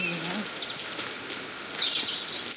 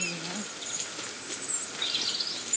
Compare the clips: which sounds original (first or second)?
first